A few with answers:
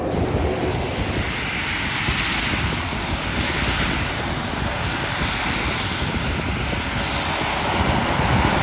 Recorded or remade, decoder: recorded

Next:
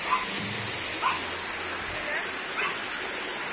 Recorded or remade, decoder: recorded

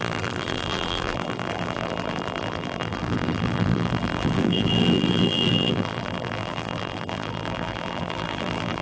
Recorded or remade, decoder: remade, vocoder, BigVGAN v2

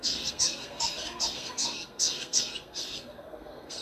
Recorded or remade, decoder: remade, codec, SNAC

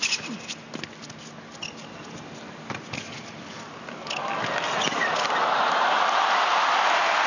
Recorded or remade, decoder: recorded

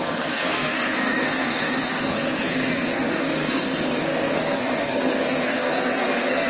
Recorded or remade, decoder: remade, codec, SNAC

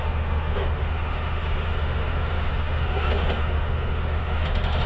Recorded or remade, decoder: remade, autoencoder, DAC-VAE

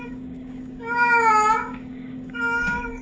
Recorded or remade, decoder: remade, codec, DAC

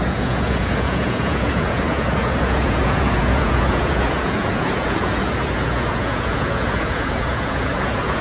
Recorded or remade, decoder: remade, vocoder, Vocos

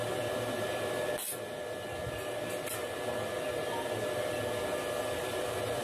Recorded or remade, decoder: recorded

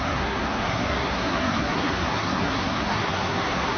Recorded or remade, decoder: remade, codec, SNAC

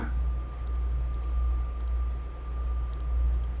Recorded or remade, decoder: recorded